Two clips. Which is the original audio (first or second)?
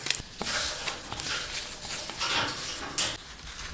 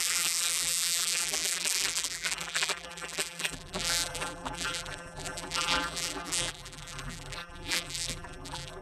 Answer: first